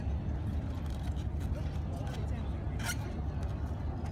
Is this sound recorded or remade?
recorded